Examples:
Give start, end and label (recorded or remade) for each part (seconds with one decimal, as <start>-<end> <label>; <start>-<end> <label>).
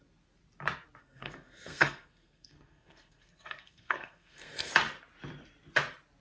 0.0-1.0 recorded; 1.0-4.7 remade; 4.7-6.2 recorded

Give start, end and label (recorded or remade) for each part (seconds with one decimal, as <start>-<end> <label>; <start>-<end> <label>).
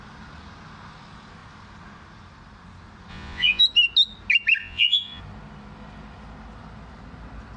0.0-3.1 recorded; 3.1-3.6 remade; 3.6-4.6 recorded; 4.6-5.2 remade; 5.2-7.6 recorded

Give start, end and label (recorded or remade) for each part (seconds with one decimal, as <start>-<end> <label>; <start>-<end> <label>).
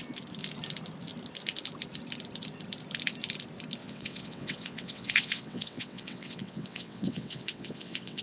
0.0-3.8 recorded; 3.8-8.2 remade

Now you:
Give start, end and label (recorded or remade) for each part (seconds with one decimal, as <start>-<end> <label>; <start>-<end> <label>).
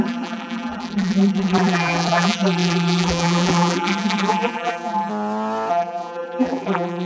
0.0-5.1 remade; 5.1-5.7 recorded; 5.7-7.1 remade